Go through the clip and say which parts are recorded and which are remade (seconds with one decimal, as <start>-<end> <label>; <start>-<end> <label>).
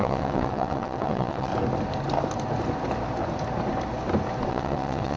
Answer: 0.0-1.5 remade; 1.5-4.5 recorded; 4.5-5.2 remade